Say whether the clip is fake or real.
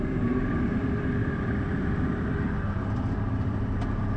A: fake